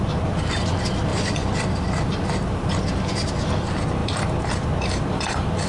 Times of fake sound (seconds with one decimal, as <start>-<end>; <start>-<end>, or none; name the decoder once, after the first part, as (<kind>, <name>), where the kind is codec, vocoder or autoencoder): 1.1-2.8 (vocoder, BigVGAN v2); 4.0-5.7